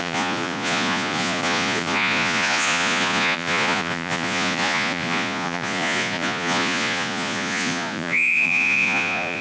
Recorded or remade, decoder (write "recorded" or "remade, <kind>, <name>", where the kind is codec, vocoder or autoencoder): remade, vocoder, Vocos